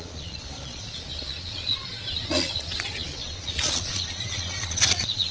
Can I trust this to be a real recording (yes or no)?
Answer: no